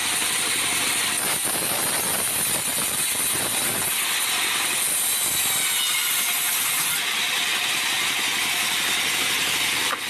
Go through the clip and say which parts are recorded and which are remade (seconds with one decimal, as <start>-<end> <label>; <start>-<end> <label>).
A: 0.0-2.7 recorded; 2.7-3.8 remade; 3.8-10.1 recorded